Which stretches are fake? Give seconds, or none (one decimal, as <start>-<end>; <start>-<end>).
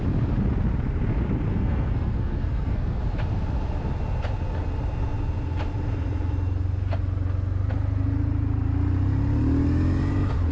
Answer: 1.5-3.0